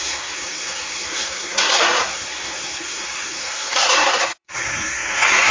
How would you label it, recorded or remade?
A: remade